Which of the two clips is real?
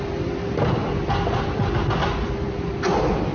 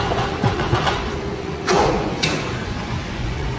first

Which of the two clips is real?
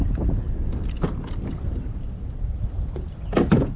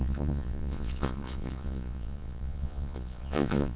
first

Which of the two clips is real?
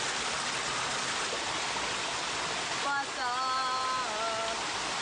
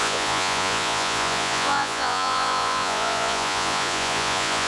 first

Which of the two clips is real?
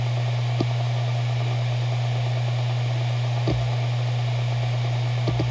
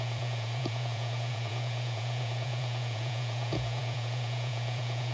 first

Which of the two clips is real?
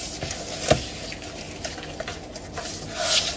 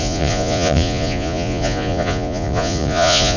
first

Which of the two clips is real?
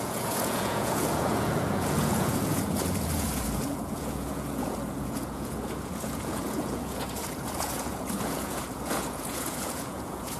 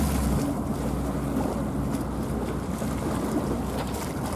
second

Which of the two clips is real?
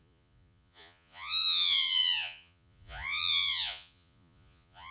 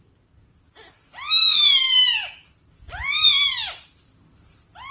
second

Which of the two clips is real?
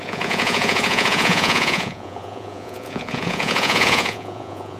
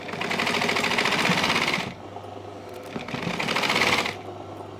second